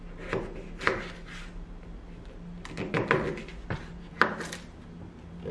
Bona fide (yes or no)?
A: yes